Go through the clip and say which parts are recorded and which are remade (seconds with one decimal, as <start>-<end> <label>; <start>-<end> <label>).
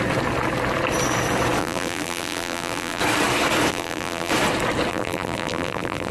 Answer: 0.0-1.6 recorded; 1.6-3.0 remade; 3.0-3.7 recorded; 3.7-4.3 remade; 4.3-4.9 recorded; 4.9-6.1 remade